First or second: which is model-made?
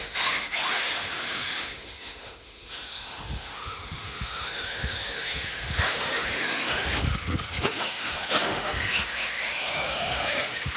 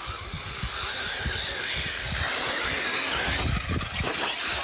first